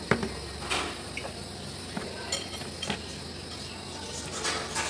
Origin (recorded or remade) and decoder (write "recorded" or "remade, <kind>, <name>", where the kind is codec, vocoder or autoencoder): recorded